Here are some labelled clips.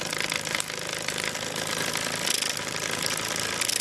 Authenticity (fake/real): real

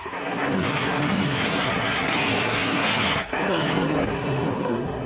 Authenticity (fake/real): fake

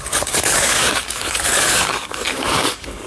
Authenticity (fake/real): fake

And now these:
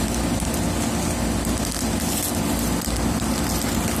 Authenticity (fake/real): real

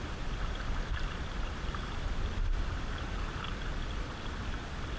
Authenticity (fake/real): fake